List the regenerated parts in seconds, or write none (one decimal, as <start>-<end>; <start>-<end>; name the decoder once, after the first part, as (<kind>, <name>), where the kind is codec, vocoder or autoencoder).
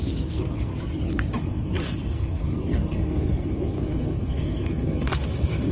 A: 0.0-0.7 (codec, SNAC); 1.4-5.7